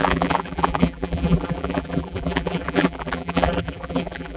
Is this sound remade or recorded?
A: remade